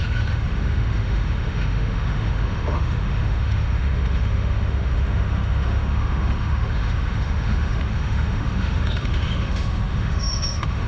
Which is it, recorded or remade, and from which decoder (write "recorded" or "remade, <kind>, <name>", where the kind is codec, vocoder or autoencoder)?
remade, autoencoder, DAC-VAE